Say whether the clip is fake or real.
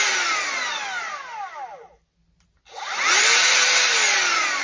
real